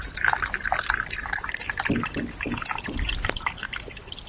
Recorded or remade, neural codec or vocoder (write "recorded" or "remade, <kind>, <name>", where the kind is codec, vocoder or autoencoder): recorded